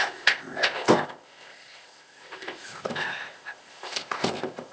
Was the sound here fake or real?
fake